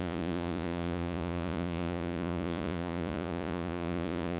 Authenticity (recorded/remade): remade